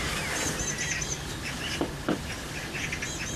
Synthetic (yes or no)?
no